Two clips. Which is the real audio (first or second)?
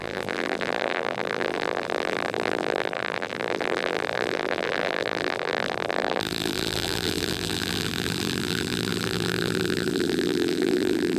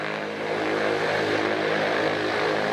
second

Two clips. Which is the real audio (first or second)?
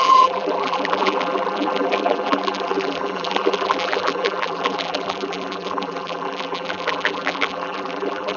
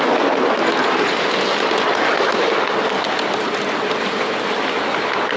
second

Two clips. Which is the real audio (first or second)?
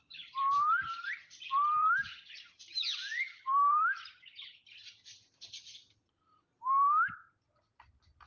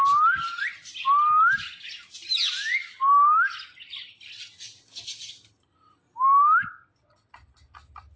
second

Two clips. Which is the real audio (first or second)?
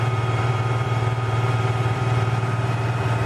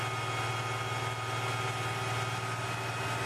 second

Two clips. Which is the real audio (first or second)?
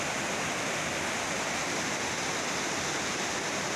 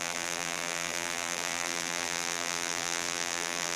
first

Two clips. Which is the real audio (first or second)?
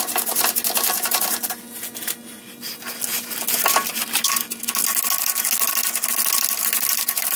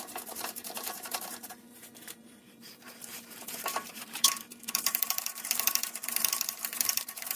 first